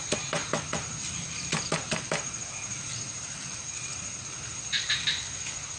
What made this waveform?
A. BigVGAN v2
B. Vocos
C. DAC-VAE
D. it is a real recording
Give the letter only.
A